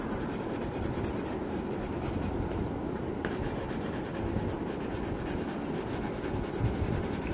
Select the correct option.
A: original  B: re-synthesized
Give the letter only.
A